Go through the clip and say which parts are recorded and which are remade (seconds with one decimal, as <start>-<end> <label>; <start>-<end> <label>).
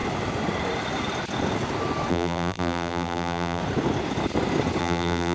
0.0-2.1 recorded; 2.1-3.6 remade; 3.6-4.8 recorded; 4.8-5.3 remade